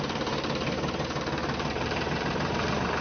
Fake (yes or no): yes